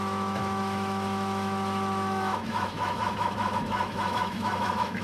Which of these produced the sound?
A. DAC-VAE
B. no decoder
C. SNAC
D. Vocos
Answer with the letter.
A